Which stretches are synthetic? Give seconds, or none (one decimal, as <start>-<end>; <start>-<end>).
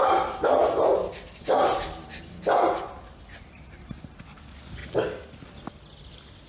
none